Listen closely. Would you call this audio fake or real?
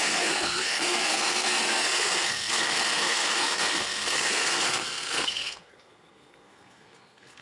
fake